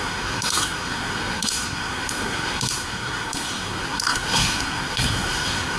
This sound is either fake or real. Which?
fake